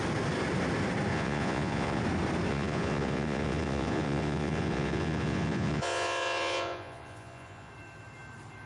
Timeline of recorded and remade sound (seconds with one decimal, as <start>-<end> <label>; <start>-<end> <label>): 0.0-1.1 recorded; 1.1-2.0 remade; 2.0-2.5 recorded; 2.5-7.7 remade; 7.7-8.7 recorded